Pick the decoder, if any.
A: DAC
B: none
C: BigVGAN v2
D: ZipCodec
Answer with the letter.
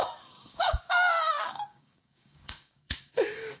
A